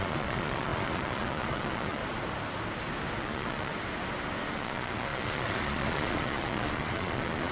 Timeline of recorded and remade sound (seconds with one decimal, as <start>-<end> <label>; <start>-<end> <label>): 0.0-2.0 remade; 2.0-3.2 recorded; 3.2-3.7 remade; 3.7-4.5 recorded; 4.5-7.5 remade